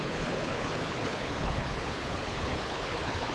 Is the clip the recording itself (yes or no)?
no